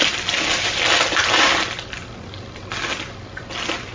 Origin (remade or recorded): recorded